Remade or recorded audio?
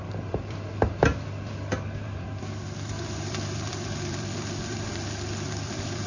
remade